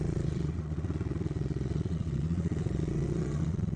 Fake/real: fake